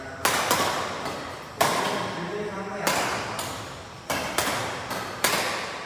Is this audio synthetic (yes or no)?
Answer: no